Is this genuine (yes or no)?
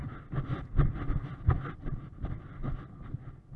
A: yes